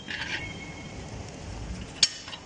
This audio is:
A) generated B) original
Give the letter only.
B